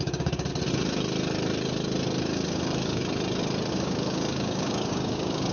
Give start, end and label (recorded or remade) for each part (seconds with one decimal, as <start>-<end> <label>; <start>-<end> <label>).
0.0-0.5 remade; 0.5-2.2 recorded; 2.2-3.0 remade; 3.0-3.7 recorded; 3.7-5.5 remade